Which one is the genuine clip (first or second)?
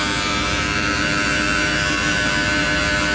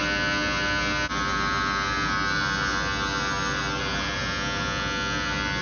second